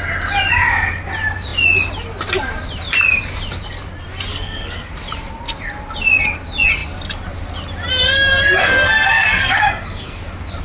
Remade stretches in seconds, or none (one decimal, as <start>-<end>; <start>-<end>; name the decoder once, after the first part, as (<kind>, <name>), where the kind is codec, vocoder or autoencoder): 4.3-4.9 (codec, SNAC); 8.6-10.2